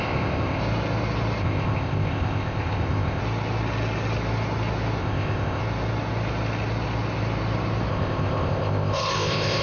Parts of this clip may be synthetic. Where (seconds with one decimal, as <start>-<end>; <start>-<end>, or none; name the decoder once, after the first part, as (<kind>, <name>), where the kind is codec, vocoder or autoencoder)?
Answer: 0.0-0.6 (codec, ZipCodec); 1.4-3.2; 5.0-5.6; 7.9-9.6

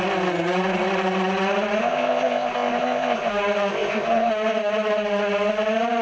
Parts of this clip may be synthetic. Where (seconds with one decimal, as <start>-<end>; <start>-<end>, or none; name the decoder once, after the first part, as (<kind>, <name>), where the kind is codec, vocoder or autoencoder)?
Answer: 1.8-3.3 (codec, ZipCodec); 3.7-4.3

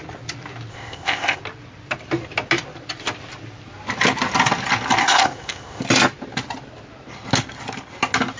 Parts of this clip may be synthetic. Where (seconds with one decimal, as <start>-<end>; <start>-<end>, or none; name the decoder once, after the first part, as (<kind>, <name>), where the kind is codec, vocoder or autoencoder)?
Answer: 0.7-1.4 (codec, ZipCodec); 5.0-5.8

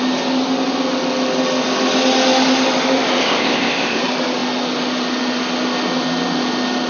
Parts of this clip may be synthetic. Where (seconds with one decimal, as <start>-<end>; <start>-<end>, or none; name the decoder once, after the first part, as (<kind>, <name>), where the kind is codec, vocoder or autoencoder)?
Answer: 3.2-4.0 (codec, ZipCodec)

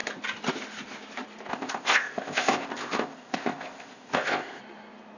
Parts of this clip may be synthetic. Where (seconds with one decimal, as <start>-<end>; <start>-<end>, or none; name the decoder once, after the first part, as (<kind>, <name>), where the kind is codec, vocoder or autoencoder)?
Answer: 1.5-4.6 (codec, ZipCodec)